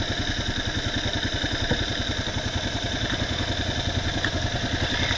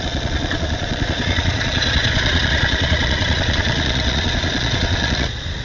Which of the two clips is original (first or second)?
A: first